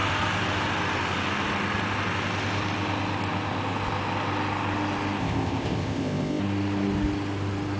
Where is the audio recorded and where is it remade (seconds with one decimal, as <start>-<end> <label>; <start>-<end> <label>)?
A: 0.0-5.2 recorded; 5.2-6.4 remade; 6.4-7.8 recorded